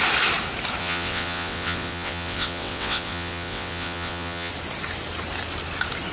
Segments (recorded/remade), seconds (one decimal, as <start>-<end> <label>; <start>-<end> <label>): 0.0-0.8 recorded; 0.8-4.5 remade; 4.5-6.1 recorded

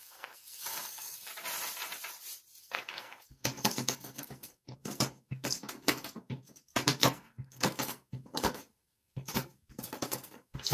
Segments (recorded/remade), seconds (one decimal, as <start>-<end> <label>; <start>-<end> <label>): 0.0-1.3 remade; 1.3-2.6 recorded; 2.6-10.7 remade